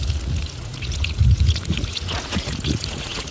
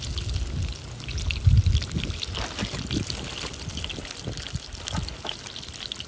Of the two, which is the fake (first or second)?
first